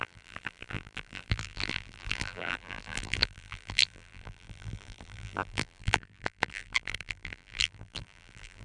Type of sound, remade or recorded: remade